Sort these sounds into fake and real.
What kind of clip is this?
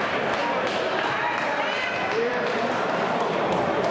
fake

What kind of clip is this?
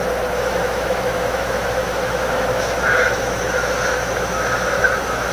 fake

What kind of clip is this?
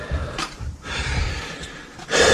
fake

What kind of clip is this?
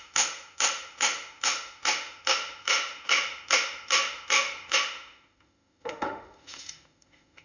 fake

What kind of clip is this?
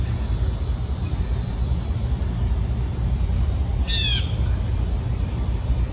real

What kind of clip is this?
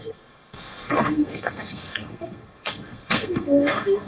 fake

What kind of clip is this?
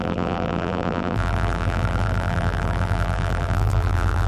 fake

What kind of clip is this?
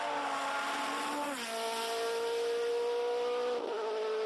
real